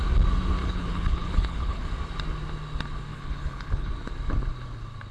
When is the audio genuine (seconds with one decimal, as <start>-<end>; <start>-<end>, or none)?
0.0-0.6; 1.9-3.1; 3.9-5.1